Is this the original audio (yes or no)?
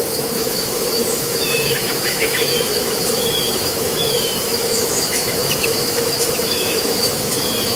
no